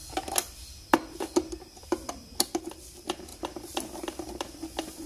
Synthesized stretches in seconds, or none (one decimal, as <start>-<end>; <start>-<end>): 3.3-3.8